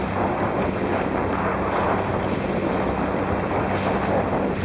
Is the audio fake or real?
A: real